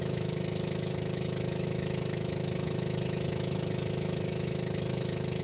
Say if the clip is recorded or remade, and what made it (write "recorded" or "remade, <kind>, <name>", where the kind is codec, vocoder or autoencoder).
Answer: remade, autoencoder, DAC-VAE